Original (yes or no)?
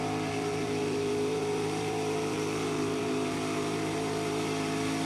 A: no